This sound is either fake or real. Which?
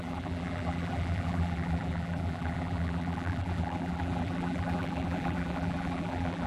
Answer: fake